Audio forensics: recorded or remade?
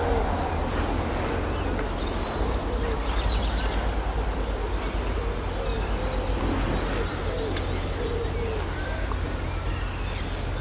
recorded